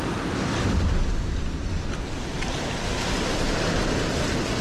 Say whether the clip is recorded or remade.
recorded